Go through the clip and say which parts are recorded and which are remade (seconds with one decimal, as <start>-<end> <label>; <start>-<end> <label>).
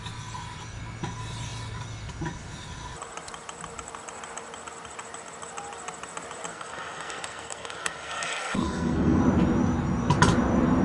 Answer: 0.0-6.5 recorded; 6.5-9.2 remade; 9.2-10.8 recorded